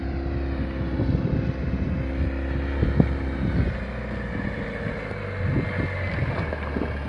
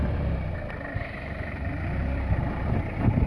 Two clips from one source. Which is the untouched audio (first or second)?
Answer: first